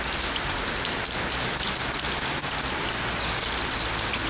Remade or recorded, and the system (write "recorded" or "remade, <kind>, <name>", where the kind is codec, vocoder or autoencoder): recorded